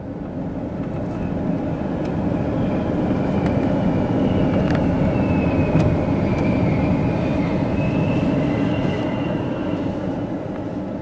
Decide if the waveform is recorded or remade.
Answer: recorded